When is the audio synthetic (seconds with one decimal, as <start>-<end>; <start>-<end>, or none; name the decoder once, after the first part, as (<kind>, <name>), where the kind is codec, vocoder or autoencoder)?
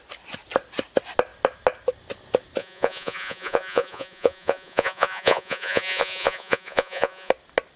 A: 2.6-7.3 (vocoder, Vocos)